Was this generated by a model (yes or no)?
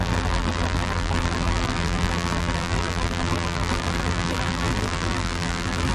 yes